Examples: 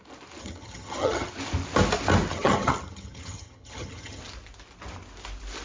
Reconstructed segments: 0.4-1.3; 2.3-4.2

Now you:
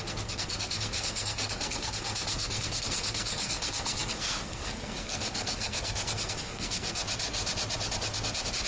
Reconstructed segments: 0.0-7.0

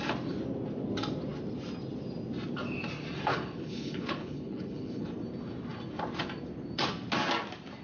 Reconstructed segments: 3.3-5.1